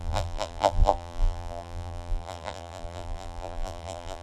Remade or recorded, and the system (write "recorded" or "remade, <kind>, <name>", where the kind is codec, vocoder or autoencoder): remade, vocoder, BigVGAN v2